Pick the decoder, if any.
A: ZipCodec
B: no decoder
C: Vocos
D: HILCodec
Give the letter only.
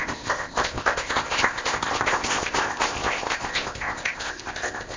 A